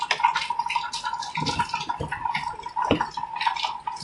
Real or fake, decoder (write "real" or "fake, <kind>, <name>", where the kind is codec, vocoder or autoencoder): real